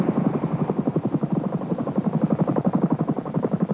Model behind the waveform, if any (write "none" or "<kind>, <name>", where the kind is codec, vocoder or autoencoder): none